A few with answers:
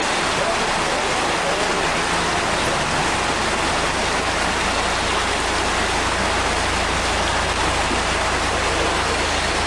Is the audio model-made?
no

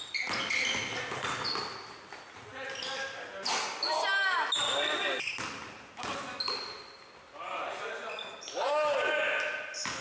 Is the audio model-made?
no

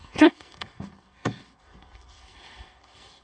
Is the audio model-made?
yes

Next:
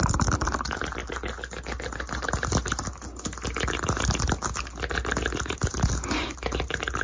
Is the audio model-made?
no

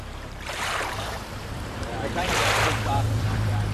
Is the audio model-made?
yes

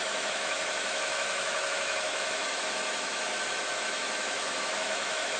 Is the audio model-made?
yes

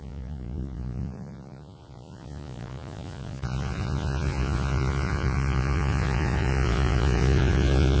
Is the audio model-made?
yes